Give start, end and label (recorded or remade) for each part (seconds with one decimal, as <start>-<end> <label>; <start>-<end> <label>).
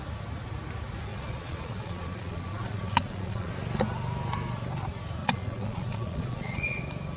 0.0-1.1 recorded; 1.1-3.5 remade; 3.5-5.2 recorded; 5.2-6.8 remade; 6.8-7.2 recorded